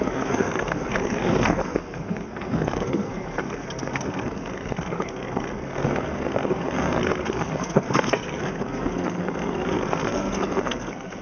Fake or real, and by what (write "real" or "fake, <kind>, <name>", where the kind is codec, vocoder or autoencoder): fake, codec, SNAC